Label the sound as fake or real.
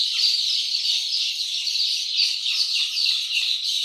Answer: fake